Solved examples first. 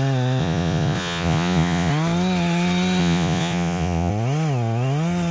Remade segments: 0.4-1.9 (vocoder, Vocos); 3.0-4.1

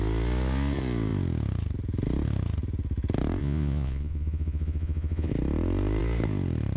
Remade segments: 3.4-5.3 (vocoder, Vocos)

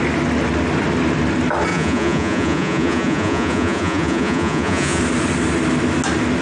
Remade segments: 1.7-5.0 (vocoder, Vocos)

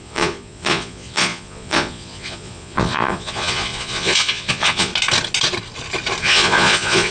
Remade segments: 0.0-4.9 (vocoder, Vocos); 6.2-7.1